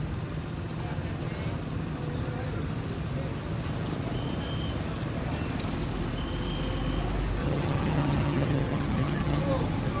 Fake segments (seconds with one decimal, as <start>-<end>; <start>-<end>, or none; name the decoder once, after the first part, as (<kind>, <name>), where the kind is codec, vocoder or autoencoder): 7.4-9.4 (vocoder, HiFi-GAN)